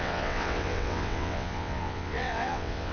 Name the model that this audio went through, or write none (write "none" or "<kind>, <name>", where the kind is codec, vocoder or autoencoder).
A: vocoder, WaveNeXt